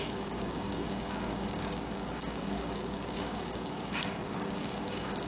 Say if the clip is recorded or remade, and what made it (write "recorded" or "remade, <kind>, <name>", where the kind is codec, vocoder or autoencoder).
remade, codec, DAC